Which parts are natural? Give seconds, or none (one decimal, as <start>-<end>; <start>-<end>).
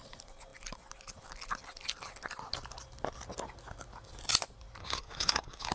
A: 0.0-4.8